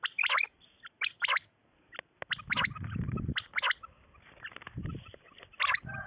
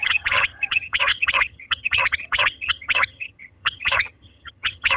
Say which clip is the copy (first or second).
second